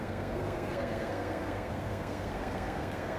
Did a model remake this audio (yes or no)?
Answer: yes